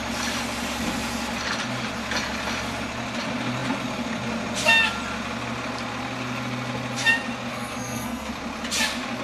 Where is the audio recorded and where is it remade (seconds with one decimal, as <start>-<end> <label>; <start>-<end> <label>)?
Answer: 0.0-7.5 recorded; 7.5-8.3 remade; 8.3-9.2 recorded